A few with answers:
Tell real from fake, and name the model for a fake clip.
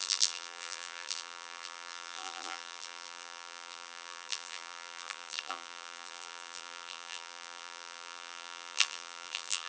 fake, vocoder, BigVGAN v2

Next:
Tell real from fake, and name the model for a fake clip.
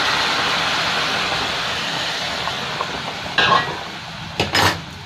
real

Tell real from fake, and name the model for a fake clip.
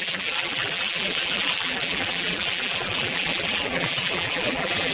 fake, vocoder, BigVGAN v2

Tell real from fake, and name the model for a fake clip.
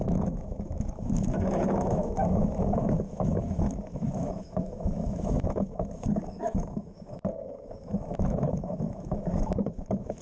fake, autoencoder, DAC-VAE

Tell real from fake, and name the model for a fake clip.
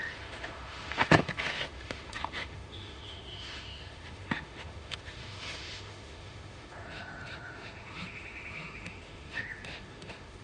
fake, autoencoder, DAC-VAE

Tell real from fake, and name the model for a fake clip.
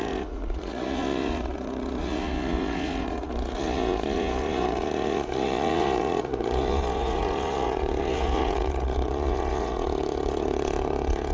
fake, vocoder, Vocos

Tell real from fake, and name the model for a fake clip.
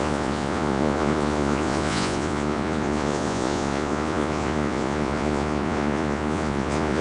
fake, vocoder, Vocos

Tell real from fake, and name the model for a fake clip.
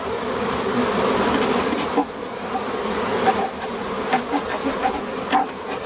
real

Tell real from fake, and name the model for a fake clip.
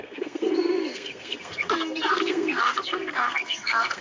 fake, codec, SNAC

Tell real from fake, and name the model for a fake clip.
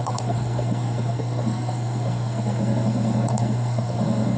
fake, codec, SNAC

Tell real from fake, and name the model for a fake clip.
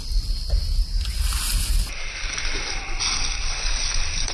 real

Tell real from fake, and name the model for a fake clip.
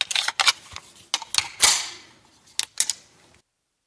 real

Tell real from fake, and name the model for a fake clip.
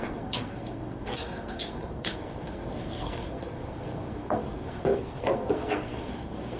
fake, codec, SNAC